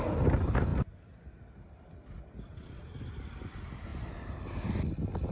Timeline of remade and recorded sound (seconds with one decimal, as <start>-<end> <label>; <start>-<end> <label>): 0.0-5.3 recorded